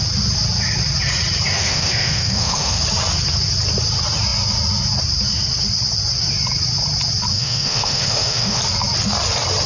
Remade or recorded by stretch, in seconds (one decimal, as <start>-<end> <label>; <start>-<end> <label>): 0.0-1.5 recorded; 1.5-2.8 remade; 2.8-7.3 recorded; 7.3-8.6 remade; 8.6-9.7 recorded